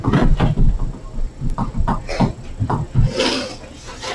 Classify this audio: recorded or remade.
recorded